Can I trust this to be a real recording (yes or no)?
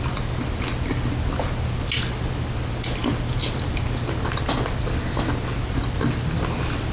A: yes